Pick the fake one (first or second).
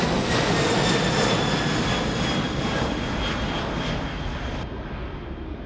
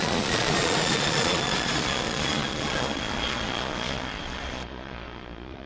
second